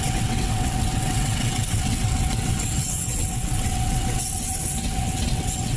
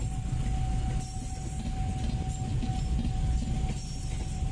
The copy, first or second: first